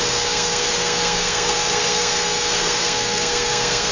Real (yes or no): no